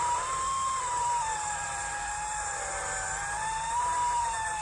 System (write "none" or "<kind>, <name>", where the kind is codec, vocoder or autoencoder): vocoder, BigVGAN v2